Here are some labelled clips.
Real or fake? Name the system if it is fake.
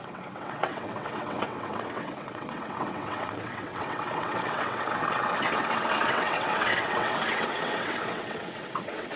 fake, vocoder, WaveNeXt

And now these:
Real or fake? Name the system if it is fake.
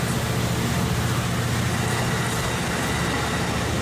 real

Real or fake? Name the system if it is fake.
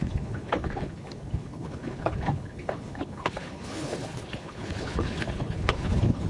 fake, codec, HILCodec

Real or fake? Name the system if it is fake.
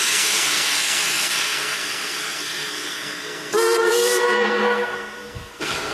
fake, codec, SNAC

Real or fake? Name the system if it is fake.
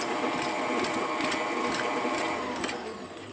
real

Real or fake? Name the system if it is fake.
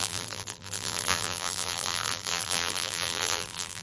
fake, vocoder, BigVGAN v2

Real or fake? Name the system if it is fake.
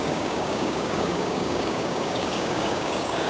fake, codec, DAC